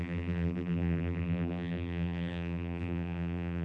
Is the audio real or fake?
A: fake